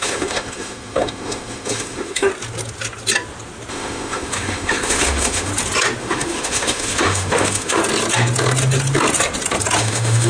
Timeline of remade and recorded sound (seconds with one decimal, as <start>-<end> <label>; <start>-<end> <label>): 0.0-2.3 remade; 2.3-3.7 recorded; 3.7-5.5 remade; 5.5-6.0 recorded; 6.0-7.8 remade; 7.8-9.8 recorded; 9.8-10.3 remade